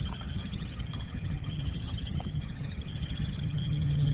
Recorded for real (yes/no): no